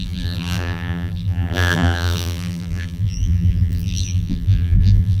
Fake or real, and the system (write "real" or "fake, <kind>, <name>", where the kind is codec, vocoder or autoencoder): fake, vocoder, BigVGAN v2